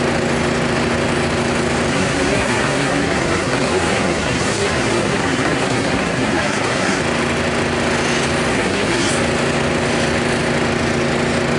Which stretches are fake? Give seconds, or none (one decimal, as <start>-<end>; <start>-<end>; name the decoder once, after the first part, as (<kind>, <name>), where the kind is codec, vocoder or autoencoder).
1.9-7.0 (codec, SNAC); 8.5-9.1